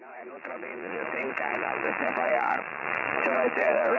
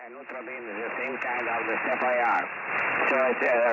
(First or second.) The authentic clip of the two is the second